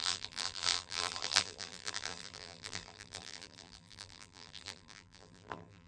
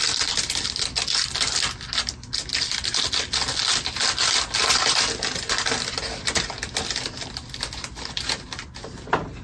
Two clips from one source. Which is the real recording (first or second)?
second